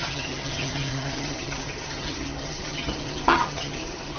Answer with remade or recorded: remade